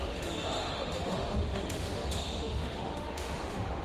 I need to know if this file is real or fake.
fake